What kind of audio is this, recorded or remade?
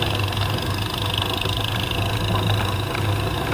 recorded